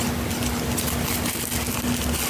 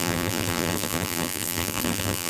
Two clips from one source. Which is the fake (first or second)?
second